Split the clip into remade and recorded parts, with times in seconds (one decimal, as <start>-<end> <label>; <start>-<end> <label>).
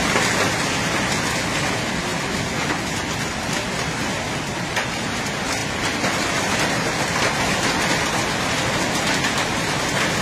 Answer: 0.0-2.1 recorded; 2.1-2.7 remade; 2.7-10.2 recorded